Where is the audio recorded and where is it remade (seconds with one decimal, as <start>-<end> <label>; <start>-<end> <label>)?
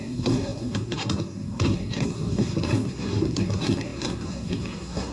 0.0-5.1 remade